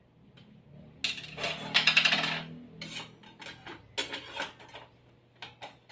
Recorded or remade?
recorded